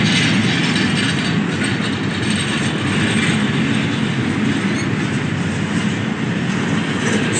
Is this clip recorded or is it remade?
recorded